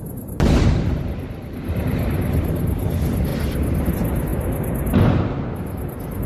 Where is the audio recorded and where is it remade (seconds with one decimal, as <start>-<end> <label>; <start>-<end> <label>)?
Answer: 0.0-6.3 recorded